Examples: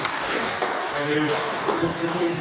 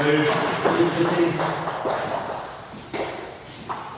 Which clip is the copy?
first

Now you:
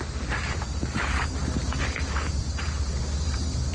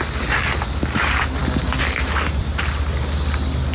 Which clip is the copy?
first